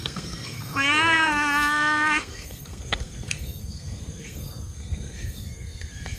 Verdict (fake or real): fake